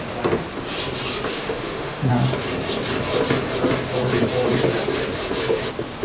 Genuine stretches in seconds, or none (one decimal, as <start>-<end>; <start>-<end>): 0.0-1.3; 2.1-6.0